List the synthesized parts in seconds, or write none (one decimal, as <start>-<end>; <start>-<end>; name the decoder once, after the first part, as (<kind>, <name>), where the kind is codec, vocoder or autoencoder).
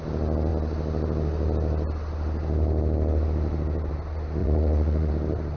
4.4-5.1 (vocoder, Vocos)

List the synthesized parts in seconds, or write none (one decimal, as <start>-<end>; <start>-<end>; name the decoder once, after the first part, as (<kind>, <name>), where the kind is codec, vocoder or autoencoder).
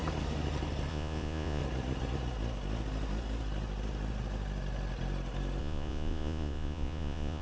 0.9-1.6 (vocoder, Vocos); 5.6-7.4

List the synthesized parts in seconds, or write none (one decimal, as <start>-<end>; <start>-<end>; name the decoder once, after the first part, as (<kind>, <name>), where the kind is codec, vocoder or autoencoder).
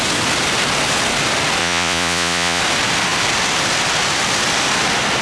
1.6-2.6 (vocoder, Vocos)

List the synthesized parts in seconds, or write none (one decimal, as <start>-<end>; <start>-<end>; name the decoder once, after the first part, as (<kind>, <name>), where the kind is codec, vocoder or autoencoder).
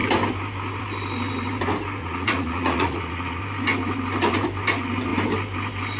2.0-3.4 (vocoder, Vocos)